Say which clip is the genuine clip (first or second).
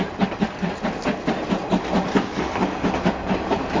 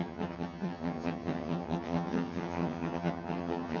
first